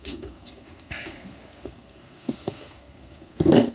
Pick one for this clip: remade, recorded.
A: remade